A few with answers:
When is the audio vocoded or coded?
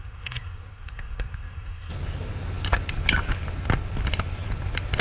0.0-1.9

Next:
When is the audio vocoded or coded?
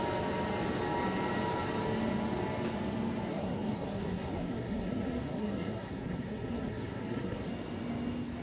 3.3-7.5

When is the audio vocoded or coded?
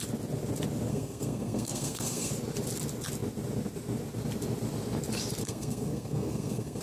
0.9-2.3; 5.4-6.8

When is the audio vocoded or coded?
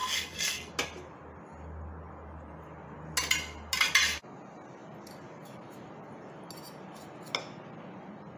0.0-0.7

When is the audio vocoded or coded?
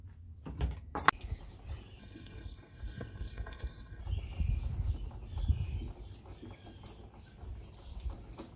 2.0-4.0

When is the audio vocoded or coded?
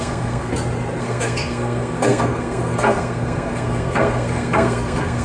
0.0-0.5; 1.0-5.2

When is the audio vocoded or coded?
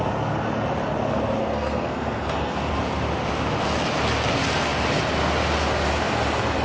1.4-2.7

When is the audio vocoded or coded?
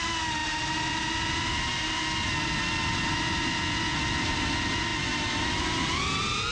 none